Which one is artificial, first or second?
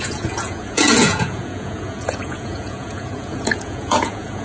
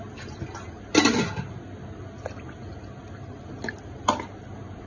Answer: first